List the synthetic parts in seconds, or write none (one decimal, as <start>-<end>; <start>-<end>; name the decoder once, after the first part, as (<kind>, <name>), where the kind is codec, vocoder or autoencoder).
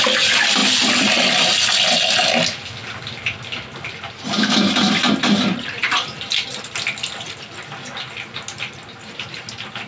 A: none